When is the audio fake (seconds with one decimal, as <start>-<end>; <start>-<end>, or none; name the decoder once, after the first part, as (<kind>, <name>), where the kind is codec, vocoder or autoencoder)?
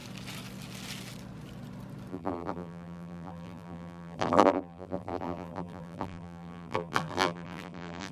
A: 2.1-8.1 (vocoder, BigVGAN v2)